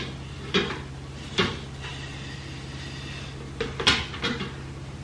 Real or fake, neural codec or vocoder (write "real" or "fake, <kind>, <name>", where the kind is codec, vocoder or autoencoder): real